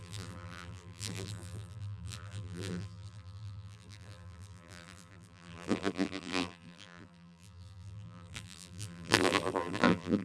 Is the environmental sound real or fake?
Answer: fake